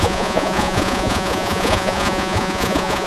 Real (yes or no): no